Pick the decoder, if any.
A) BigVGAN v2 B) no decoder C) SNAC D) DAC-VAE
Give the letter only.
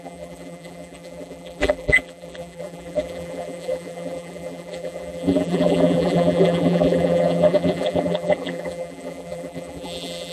A